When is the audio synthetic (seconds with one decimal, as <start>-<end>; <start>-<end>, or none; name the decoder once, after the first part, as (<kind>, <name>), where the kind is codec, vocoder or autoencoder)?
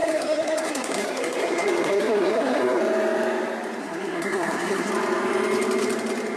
0.0-2.8 (codec, SNAC); 3.8-4.9